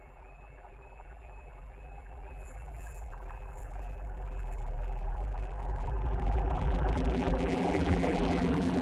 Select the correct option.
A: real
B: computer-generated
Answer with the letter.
B